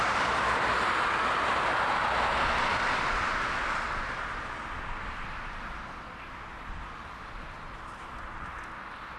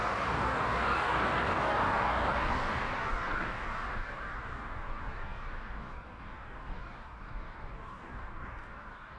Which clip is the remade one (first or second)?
second